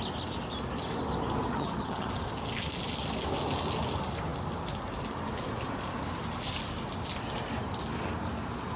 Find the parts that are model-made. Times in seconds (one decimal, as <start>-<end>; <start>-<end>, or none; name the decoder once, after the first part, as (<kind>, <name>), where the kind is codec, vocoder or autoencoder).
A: 1.5-2.1 (vocoder, HiFi-GAN)